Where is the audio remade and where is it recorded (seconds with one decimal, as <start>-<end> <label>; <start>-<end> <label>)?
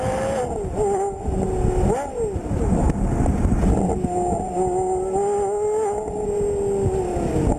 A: 0.0-7.6 recorded